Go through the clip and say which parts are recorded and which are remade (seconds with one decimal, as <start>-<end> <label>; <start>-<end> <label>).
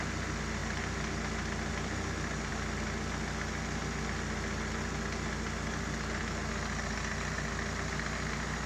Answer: 0.0-8.7 recorded